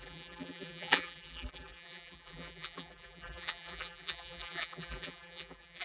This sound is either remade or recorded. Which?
remade